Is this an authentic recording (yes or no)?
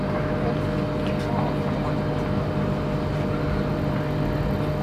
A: yes